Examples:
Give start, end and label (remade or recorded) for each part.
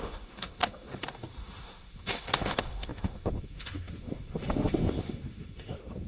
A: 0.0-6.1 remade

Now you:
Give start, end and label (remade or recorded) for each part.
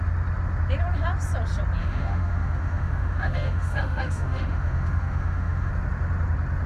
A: 0.0-1.8 recorded; 1.8-5.7 remade; 5.7-6.7 recorded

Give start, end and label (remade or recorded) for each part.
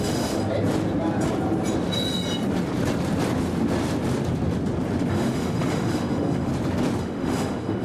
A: 0.0-0.4 remade; 0.4-5.1 recorded; 5.1-6.5 remade; 6.5-7.0 recorded; 7.0-7.8 remade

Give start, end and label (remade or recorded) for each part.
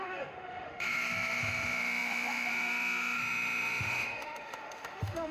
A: 0.0-5.3 remade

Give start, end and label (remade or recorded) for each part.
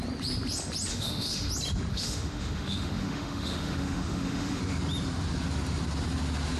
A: 0.0-0.9 recorded; 0.9-1.5 remade; 1.5-1.9 recorded; 1.9-4.6 remade; 4.6-6.6 recorded